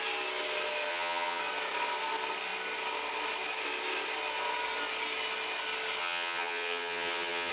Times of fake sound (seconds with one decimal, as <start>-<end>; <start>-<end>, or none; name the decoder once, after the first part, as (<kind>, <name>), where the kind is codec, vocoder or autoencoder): 0.9-1.4 (vocoder, HiFi-GAN); 6.0-7.5